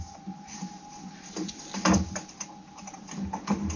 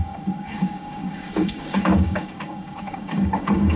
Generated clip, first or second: second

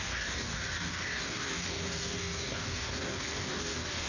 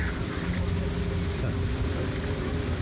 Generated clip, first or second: first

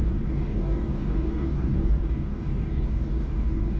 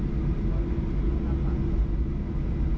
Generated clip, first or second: first